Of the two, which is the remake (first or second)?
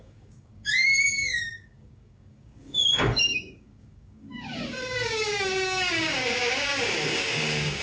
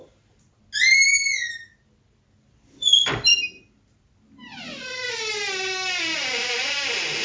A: first